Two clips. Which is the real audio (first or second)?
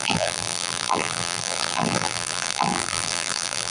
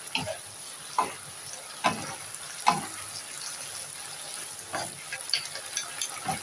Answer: second